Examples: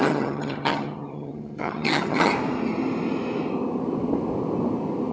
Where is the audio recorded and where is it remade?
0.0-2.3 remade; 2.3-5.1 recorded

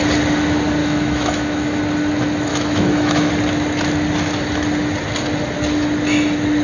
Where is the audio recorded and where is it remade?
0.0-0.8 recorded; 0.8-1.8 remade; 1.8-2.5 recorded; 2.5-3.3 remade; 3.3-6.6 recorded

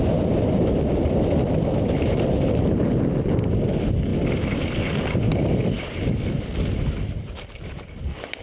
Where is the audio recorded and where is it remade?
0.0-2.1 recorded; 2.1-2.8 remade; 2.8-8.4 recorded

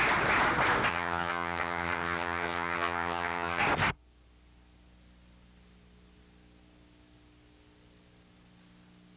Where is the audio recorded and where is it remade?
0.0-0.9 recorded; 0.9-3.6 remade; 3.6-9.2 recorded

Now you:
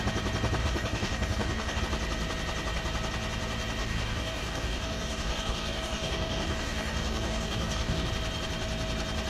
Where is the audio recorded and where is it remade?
0.0-0.6 recorded; 0.6-1.8 remade; 1.8-3.8 recorded; 3.8-8.1 remade; 8.1-9.3 recorded